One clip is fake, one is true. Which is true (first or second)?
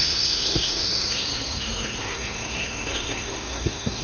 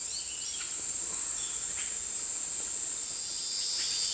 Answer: second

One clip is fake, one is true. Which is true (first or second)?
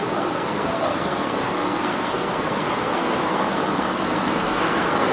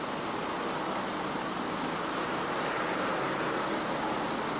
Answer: second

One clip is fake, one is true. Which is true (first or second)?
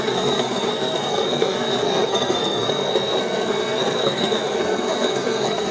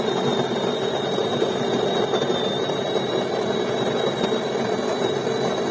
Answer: second